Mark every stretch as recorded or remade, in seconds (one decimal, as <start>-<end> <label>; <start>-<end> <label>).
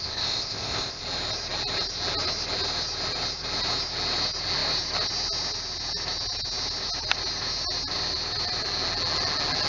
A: 0.0-1.0 remade; 1.0-9.7 recorded